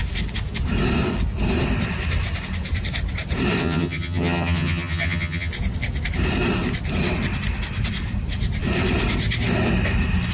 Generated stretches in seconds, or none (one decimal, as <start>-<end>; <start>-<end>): 3.6-5.5

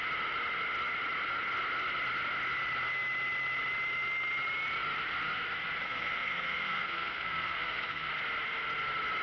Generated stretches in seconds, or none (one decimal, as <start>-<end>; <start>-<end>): 5.8-8.1

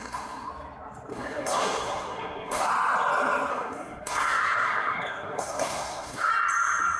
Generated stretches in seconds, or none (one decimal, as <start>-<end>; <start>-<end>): 0.0-0.5; 1.1-2.7; 3.5-6.3